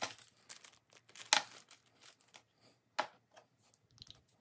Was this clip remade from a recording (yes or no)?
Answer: no